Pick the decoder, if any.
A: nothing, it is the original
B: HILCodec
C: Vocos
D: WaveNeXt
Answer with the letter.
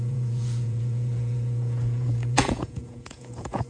C